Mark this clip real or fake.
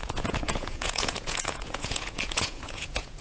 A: fake